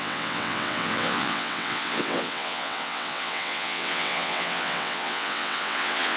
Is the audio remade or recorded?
remade